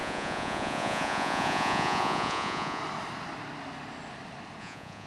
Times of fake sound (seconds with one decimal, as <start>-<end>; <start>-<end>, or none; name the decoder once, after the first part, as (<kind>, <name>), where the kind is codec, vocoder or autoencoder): 0.0-2.8 (vocoder, Vocos); 4.6-5.1